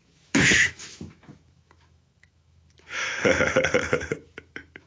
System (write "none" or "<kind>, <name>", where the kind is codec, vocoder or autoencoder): autoencoder, DAC-VAE